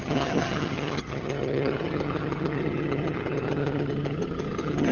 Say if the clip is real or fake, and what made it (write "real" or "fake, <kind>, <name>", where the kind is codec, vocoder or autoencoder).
fake, vocoder, HiFi-GAN